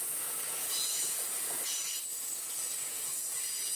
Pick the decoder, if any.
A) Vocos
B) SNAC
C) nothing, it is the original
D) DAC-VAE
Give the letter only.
A